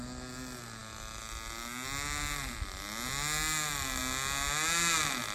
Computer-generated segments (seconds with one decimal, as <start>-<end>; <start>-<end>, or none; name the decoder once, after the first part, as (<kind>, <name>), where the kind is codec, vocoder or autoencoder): none